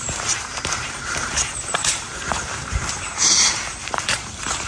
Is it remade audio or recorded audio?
remade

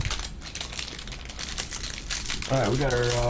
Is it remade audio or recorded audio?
recorded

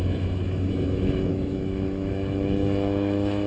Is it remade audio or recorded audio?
remade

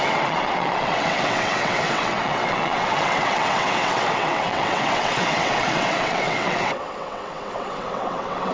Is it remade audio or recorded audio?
remade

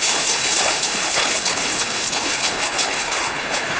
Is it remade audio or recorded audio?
remade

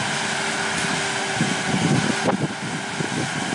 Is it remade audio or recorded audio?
recorded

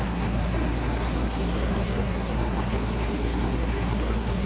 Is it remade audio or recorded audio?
remade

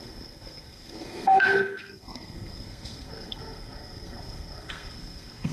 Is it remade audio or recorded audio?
remade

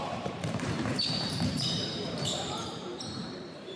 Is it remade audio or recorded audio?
remade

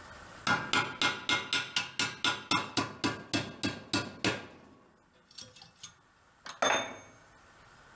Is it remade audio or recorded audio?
recorded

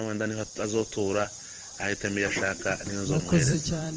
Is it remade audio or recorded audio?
remade